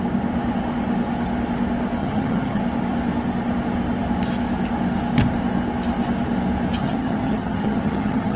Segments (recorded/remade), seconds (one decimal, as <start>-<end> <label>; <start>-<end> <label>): 0.0-2.0 recorded; 2.0-2.6 remade; 2.6-6.8 recorded; 6.8-8.4 remade